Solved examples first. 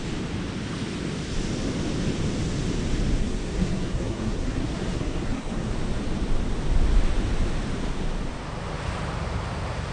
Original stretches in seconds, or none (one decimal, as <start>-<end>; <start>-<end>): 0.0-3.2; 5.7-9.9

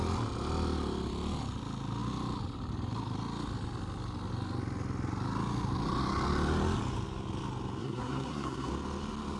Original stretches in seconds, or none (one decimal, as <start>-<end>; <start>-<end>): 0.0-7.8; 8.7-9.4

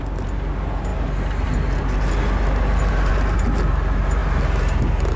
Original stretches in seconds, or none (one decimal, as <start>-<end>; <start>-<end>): 0.0-5.2

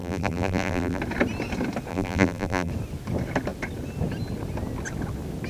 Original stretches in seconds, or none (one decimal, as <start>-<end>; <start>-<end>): 1.0-1.9; 2.7-5.5

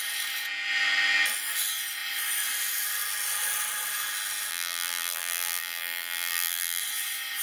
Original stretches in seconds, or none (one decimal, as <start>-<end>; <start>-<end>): 0.0-4.5; 6.8-7.4

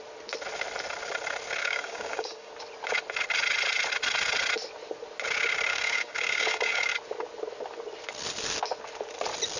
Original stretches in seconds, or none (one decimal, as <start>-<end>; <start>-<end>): 0.0-1.6; 2.5-5.7; 6.9-9.6

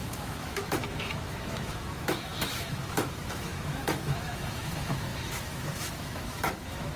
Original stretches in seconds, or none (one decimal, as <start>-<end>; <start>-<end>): none

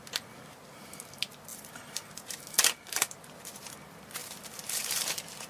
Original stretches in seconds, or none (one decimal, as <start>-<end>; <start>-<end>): 0.0-1.5; 2.4-4.2